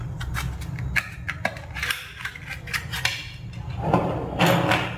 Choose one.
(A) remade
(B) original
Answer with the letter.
B